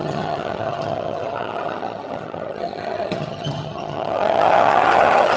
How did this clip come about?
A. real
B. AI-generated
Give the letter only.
B